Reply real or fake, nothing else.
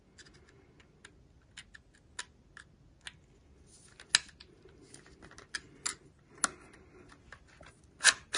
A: real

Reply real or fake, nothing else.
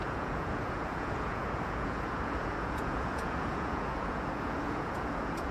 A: fake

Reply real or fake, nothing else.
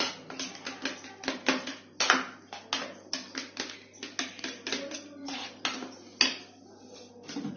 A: real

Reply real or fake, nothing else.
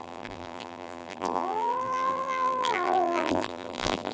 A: fake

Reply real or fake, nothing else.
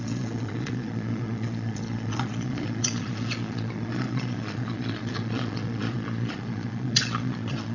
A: fake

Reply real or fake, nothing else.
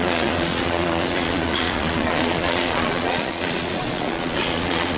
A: fake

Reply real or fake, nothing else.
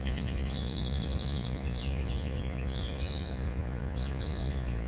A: fake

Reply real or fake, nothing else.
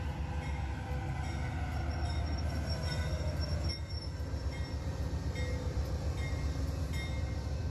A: real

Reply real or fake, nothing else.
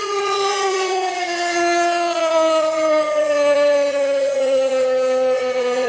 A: fake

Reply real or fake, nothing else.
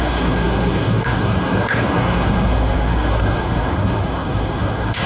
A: fake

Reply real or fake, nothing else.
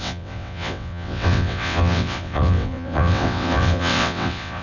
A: fake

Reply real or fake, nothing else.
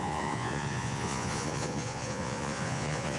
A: fake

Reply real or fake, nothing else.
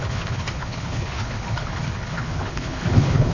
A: fake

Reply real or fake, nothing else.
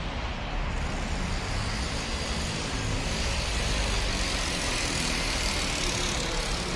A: real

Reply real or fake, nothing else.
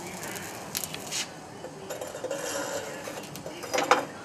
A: real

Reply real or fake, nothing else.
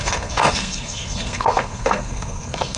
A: fake